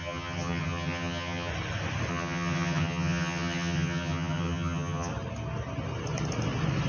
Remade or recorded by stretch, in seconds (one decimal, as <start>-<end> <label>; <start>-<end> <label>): 0.0-1.5 remade; 1.5-2.1 recorded; 2.1-5.1 remade; 5.1-6.9 recorded